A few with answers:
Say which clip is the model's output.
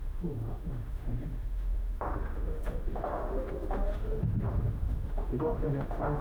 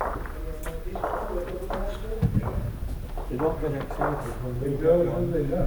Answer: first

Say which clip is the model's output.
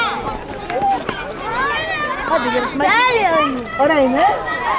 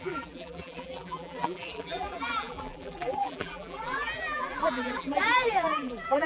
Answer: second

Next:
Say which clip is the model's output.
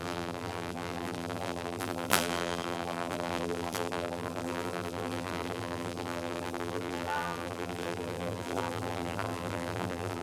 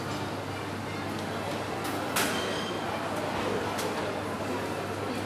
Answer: first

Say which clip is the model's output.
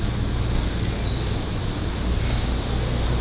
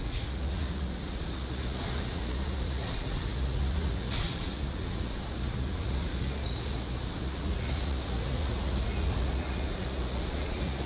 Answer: second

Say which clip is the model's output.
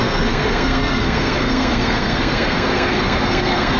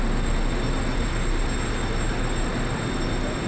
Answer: first